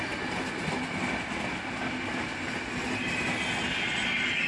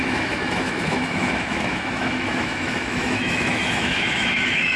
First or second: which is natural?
first